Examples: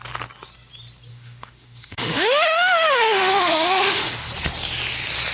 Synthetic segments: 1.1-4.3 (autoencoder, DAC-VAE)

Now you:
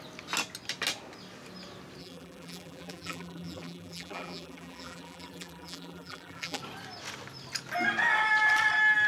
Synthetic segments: 2.0-6.6 (vocoder, BigVGAN v2)

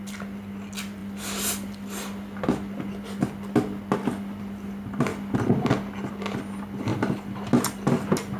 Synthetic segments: none

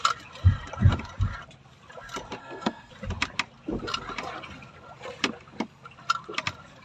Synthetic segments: 2.4-2.9 (codec, SNAC)

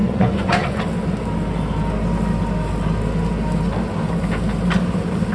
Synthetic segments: 0.0-0.8 (vocoder, Vocos)

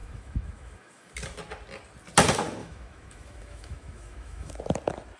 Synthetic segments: 0.0-1.1 (autoencoder, DAC-VAE); 2.6-4.5

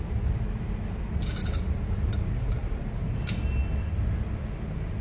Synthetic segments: none

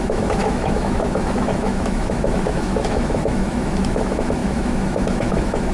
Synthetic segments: 0.0-5.7 (autoencoder, DAC-VAE)